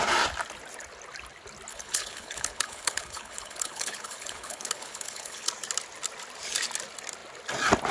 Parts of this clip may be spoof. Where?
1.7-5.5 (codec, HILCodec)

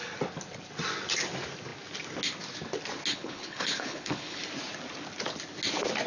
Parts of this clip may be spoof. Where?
3.1-4.4 (codec, HILCodec)

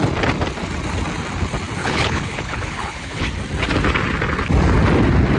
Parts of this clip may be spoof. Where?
1.8-3.3 (codec, HILCodec)

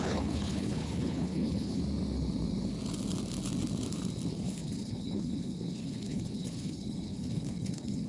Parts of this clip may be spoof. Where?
0.0-1.8 (codec, HILCodec); 4.3-8.1

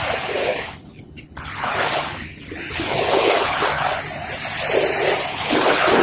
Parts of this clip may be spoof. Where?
0.4-4.0 (codec, HILCodec); 5.3-6.0

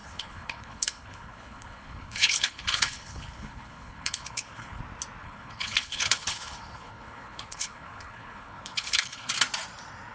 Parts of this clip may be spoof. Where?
0.0-4.8 (codec, HILCodec); 5.2-9.3